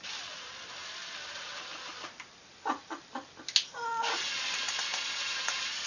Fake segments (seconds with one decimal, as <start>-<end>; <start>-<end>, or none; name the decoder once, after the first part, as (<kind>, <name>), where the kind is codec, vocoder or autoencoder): 4.9-5.5 (vocoder, Vocos)